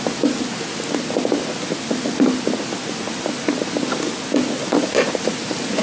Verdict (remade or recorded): recorded